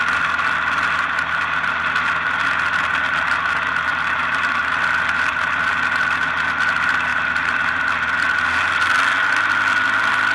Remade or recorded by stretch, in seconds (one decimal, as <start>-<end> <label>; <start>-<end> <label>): 0.0-7.1 recorded; 7.1-7.8 remade; 7.8-10.3 recorded